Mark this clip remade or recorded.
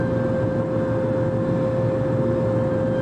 recorded